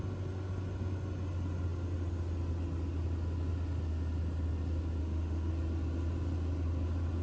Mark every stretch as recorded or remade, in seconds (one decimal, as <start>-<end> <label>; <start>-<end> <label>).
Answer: 0.0-5.0 recorded; 5.0-5.5 remade; 5.5-7.2 recorded